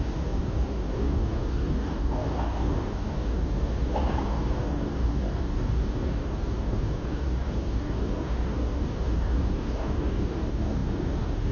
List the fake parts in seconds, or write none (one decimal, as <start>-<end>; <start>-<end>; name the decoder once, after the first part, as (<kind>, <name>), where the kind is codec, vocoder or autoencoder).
0.0-11.5 (codec, DAC)